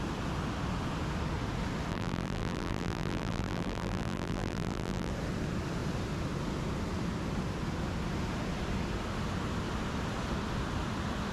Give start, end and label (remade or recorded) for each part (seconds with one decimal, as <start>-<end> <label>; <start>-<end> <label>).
0.0-1.9 recorded; 1.9-5.1 remade; 5.1-11.3 recorded